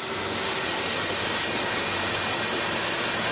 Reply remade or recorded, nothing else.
recorded